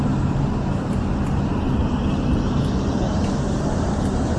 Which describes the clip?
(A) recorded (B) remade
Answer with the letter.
B